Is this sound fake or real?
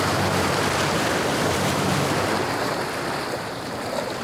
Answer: fake